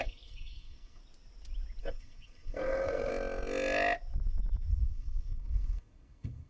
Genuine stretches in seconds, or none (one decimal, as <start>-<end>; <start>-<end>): 1.0-1.8; 3.1-4.7